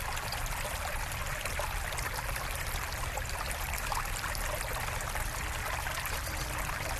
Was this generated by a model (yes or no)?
no